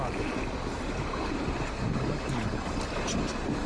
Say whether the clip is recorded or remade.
recorded